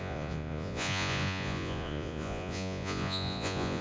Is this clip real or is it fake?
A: fake